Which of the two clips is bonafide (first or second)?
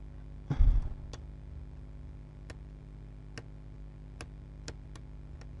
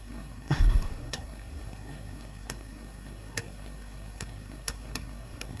first